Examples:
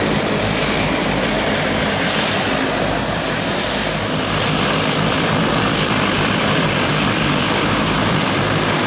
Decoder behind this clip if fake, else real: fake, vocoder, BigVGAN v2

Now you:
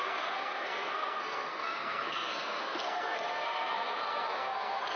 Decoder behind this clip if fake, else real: fake, codec, SNAC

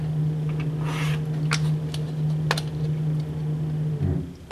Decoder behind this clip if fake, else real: real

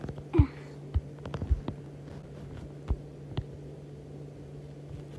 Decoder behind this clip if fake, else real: real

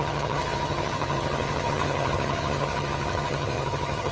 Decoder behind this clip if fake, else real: fake, vocoder, HiFi-GAN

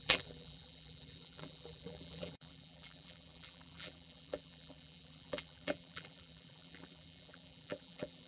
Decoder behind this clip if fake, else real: fake, vocoder, BigVGAN v2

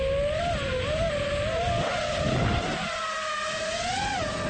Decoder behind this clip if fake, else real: real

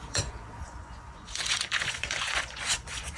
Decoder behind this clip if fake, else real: fake, vocoder, Vocos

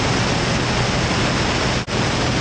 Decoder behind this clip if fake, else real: real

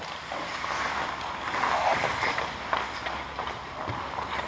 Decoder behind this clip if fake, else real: real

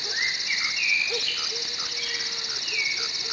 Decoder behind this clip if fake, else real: real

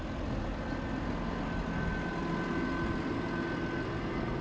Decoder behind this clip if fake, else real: real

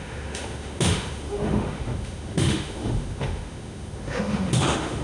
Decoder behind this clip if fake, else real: fake, autoencoder, DAC-VAE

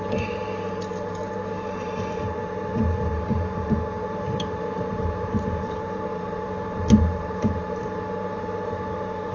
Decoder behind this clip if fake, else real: fake, vocoder, BigVGAN v2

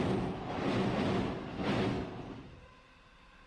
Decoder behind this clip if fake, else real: real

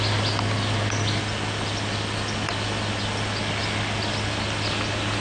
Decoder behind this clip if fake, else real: real